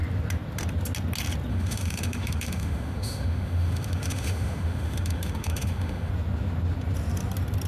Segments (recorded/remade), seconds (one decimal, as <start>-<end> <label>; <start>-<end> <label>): 0.0-1.5 recorded; 1.5-6.1 remade; 6.1-7.7 recorded